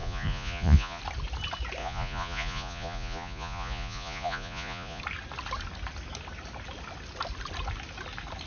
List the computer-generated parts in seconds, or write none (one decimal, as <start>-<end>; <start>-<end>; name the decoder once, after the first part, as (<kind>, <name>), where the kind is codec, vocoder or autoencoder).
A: 0.0-1.0 (vocoder, Vocos); 1.8-5.0